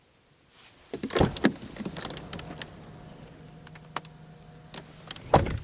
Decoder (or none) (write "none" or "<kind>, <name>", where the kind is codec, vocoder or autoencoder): none